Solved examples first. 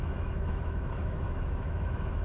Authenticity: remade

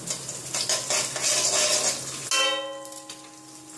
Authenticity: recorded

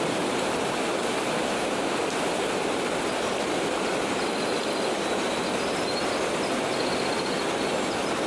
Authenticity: recorded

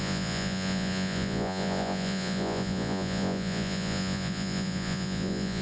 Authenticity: remade